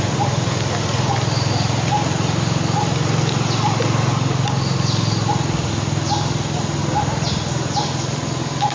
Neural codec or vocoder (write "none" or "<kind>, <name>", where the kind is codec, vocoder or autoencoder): none